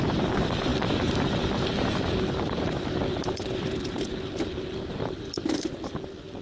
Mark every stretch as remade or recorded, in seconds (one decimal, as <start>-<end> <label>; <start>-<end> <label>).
0.0-3.1 recorded; 3.1-4.1 remade; 4.1-4.8 recorded; 4.8-5.7 remade; 5.7-6.4 recorded